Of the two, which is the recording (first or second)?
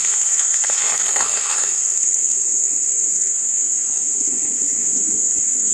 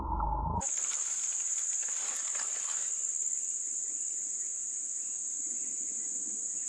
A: second